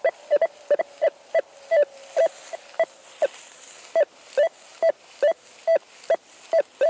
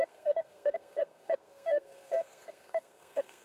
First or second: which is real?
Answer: first